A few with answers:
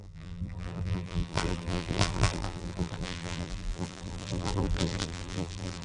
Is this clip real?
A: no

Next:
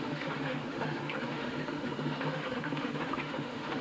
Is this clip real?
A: no